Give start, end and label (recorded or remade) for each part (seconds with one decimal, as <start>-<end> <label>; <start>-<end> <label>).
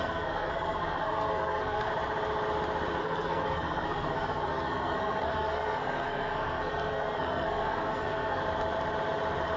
0.0-1.9 remade; 1.9-3.0 recorded; 3.0-8.4 remade; 8.4-9.6 recorded